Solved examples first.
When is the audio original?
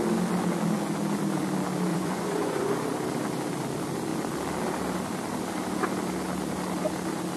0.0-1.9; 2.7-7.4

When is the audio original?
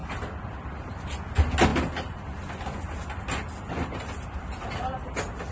0.0-5.5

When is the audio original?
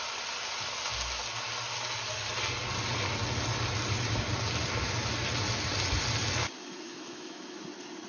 0.0-6.6; 7.6-8.1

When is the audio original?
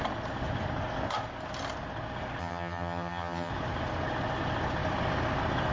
0.0-2.4; 3.5-5.7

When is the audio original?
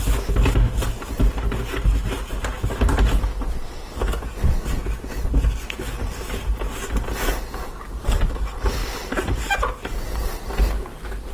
0.0-8.8; 9.5-11.3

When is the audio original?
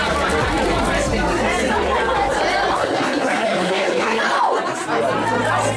0.0-2.7; 4.2-5.8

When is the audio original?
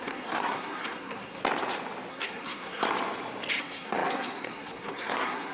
1.4-2.1; 2.8-3.6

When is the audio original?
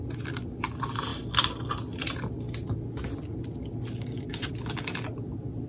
0.0-5.7